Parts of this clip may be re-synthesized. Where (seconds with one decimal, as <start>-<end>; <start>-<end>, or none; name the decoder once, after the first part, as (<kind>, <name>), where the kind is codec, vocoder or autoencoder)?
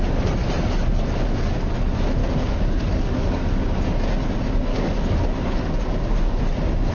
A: 2.2-3.5 (codec, DAC); 4.7-6.4